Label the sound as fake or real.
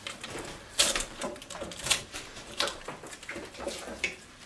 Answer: fake